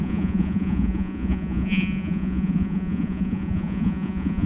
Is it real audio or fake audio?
fake